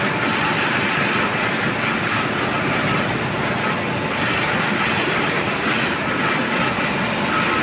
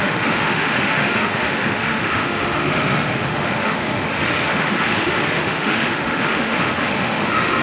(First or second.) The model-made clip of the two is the second